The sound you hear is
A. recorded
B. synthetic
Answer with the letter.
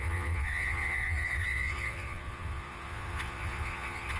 B